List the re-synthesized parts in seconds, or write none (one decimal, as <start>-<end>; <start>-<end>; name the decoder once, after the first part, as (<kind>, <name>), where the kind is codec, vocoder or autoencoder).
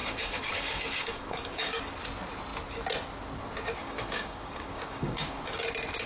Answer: 0.0-1.8 (codec, DAC); 3.8-5.6